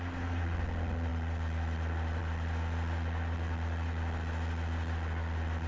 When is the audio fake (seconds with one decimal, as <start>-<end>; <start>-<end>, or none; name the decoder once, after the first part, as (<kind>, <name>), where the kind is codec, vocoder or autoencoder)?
none